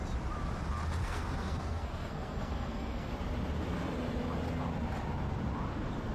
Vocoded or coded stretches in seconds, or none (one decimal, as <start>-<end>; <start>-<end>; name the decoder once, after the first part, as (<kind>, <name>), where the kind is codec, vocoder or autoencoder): 1.0-3.1 (codec, SNAC)